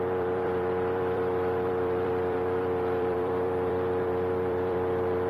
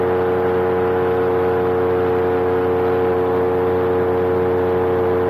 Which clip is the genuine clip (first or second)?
second